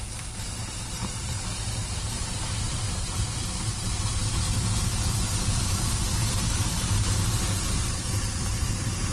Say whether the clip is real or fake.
fake